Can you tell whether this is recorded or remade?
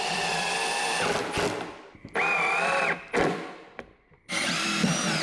remade